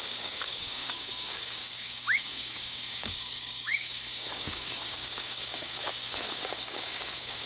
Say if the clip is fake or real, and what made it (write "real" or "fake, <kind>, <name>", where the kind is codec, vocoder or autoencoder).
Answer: fake, codec, DAC